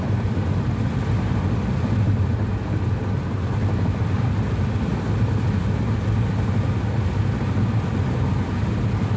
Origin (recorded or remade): recorded